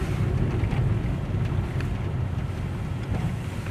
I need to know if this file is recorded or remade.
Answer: recorded